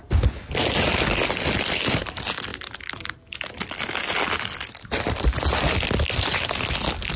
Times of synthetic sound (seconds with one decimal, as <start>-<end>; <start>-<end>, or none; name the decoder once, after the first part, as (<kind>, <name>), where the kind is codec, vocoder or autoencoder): none